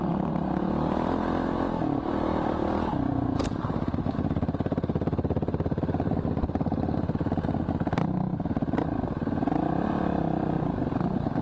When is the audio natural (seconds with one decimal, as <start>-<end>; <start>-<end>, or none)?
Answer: 0.0-11.4